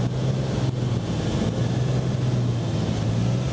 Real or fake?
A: real